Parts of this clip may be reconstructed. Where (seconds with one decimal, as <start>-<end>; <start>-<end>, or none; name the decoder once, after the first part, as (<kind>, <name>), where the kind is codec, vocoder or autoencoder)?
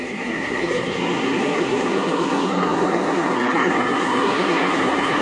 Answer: 0.0-5.2 (codec, SNAC)